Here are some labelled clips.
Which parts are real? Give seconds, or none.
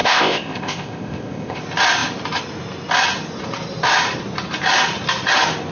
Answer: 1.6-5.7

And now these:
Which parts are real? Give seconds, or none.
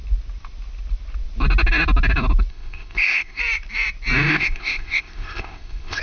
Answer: 0.0-2.5; 3.4-4.3